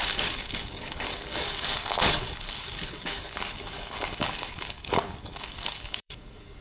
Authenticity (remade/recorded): remade